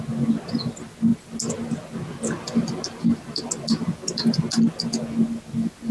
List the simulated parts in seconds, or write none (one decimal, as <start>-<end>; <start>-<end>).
none